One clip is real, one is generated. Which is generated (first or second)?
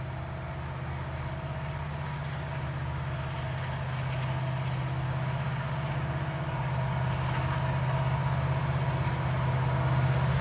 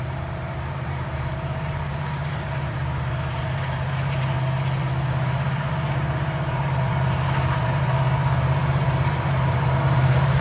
second